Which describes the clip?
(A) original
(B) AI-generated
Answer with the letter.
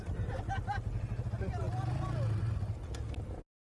A